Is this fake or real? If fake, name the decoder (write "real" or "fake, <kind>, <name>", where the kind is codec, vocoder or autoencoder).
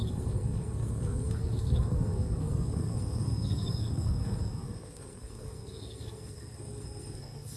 fake, codec, SNAC